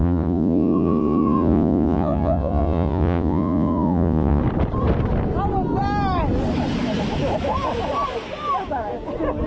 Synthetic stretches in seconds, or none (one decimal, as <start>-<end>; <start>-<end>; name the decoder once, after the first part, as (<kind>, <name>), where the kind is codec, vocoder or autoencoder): 0.0-4.4 (vocoder, Vocos)